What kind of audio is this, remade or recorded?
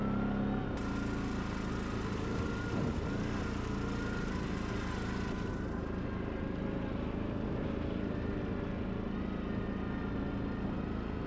recorded